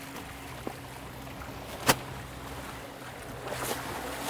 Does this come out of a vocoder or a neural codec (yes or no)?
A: no